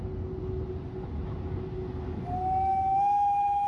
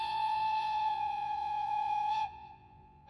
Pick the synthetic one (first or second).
second